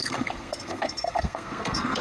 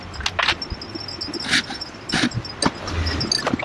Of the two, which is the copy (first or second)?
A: first